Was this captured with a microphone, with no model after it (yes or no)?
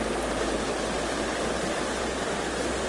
yes